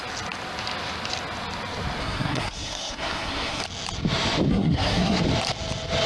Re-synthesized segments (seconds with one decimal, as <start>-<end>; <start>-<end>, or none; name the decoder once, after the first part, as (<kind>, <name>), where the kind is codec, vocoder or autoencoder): 2.0-3.6 (codec, SNAC); 4.5-5.2